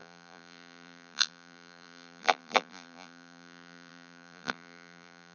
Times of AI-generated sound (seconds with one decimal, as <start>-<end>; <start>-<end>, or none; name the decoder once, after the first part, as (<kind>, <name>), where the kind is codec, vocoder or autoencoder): 0.0-5.3 (vocoder, BigVGAN v2)